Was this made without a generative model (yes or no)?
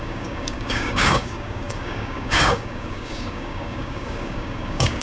no